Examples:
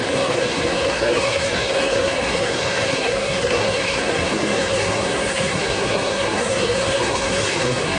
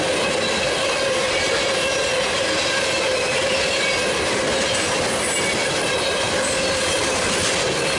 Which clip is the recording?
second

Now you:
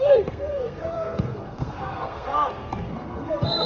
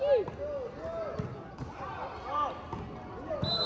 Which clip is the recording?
second